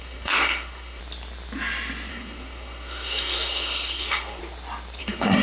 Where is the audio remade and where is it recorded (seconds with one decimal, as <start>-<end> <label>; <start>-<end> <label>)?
0.0-1.0 remade; 1.0-2.1 recorded; 2.1-4.4 remade; 4.4-5.0 recorded; 5.0-5.4 remade

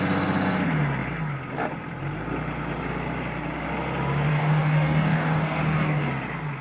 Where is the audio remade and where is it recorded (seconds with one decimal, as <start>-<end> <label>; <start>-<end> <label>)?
0.0-4.3 recorded; 4.3-6.1 remade; 6.1-6.6 recorded

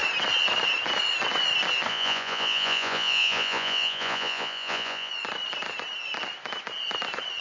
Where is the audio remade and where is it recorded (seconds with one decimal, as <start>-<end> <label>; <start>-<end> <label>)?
0.0-1.9 recorded; 1.9-5.1 remade; 5.1-7.4 recorded

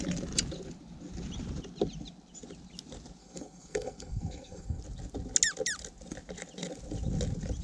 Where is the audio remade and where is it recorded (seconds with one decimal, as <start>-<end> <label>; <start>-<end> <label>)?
0.0-3.2 recorded; 3.2-4.8 remade; 4.8-7.6 recorded

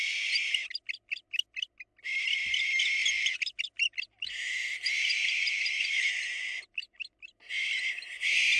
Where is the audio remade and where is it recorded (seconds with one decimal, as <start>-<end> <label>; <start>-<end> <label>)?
0.0-3.0 recorded; 3.0-3.6 remade; 3.6-4.6 recorded; 4.6-6.6 remade; 6.6-8.6 recorded

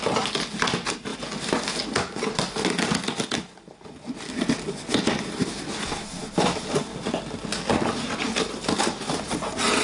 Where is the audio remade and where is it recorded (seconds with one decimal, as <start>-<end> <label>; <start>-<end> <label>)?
0.0-9.8 recorded